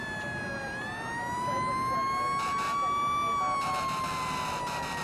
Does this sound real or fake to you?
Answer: real